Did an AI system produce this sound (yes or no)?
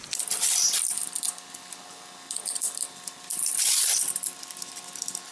no